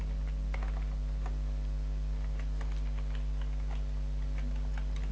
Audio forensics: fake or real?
real